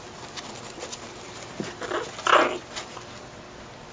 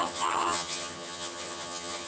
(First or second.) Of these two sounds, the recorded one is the first